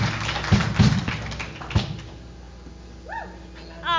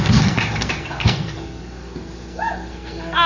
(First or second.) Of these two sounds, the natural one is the first